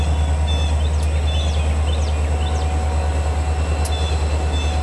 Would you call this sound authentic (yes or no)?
yes